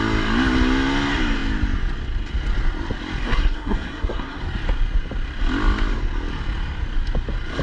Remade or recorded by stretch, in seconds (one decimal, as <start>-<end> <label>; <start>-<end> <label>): 0.0-3.2 recorded; 3.2-4.4 remade; 4.4-7.6 recorded